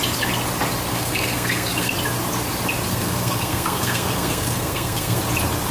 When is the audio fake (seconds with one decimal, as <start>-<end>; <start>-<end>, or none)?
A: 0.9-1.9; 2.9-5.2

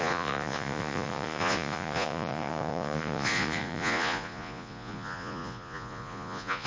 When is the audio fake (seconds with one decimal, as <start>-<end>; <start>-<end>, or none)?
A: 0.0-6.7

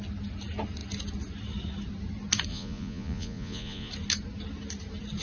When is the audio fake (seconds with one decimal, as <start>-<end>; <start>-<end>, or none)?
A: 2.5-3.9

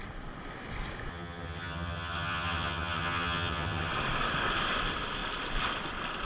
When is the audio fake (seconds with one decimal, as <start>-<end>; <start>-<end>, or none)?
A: 1.1-3.9

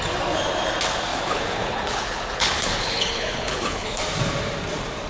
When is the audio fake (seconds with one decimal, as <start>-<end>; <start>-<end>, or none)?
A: 1.1-4.0

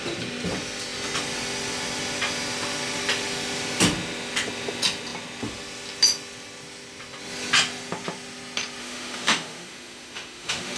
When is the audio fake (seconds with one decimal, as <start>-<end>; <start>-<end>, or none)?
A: 8.8-10.8